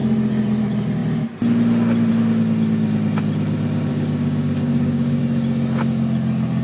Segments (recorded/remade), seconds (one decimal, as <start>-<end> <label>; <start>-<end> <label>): 0.0-3.9 recorded; 3.9-5.2 remade; 5.2-6.6 recorded